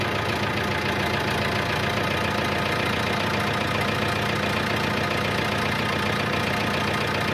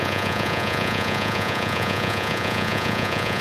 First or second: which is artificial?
second